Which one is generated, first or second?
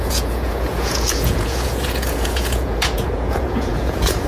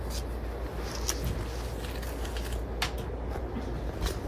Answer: first